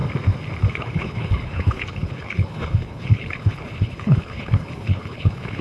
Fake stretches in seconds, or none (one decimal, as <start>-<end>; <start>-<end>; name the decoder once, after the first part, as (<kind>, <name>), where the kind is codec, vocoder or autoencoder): 0.7-5.6 (codec, HILCodec)

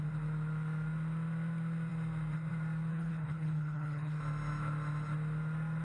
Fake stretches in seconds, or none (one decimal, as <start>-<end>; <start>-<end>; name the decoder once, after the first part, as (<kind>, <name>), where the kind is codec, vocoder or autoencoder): 2.9-4.2 (codec, HILCodec)

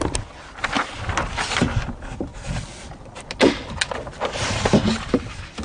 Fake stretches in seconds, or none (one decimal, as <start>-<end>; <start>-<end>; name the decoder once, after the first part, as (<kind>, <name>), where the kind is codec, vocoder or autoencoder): none

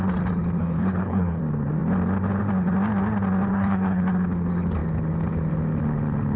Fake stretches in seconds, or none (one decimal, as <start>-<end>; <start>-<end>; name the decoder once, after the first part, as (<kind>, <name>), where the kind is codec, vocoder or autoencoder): 0.6-1.4 (codec, HILCodec); 3.5-4.0

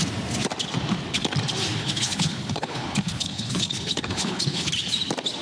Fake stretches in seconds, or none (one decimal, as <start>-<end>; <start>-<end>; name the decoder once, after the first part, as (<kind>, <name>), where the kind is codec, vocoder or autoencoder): 1.8-4.7 (codec, HILCodec)